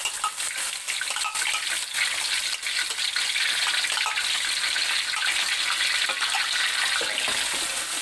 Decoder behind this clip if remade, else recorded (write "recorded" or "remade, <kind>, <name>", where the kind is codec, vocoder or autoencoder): recorded